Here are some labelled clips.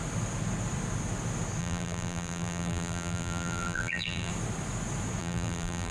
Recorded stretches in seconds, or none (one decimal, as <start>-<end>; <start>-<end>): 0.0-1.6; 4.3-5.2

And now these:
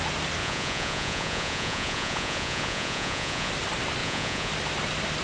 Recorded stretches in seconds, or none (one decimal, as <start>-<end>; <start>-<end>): 0.0-0.4; 3.5-4.0; 4.5-5.2

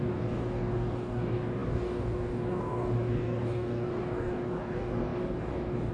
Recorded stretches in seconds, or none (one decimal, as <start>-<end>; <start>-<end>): none